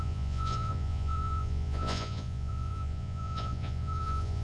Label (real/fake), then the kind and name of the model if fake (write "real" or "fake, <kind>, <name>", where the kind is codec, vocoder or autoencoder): fake, vocoder, Vocos